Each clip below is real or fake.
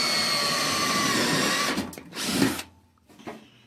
real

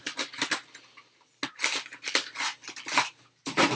real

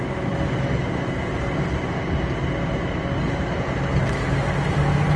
real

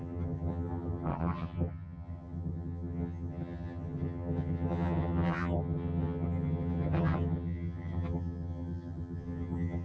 fake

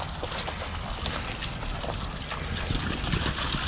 real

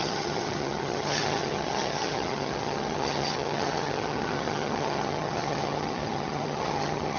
fake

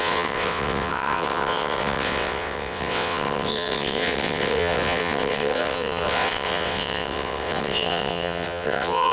fake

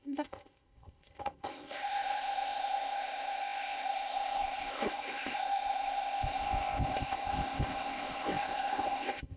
fake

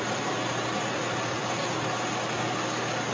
real